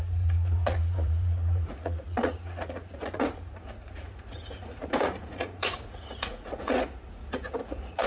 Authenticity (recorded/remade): remade